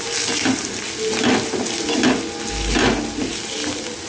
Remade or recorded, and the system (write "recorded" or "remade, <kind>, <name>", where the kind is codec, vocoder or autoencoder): recorded